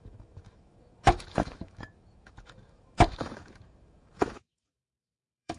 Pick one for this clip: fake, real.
fake